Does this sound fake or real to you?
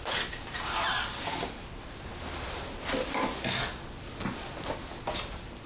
real